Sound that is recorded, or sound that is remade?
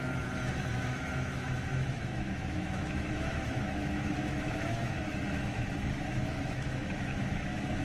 remade